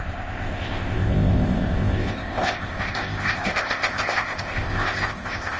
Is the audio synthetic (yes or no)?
yes